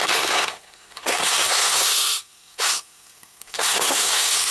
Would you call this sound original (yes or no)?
no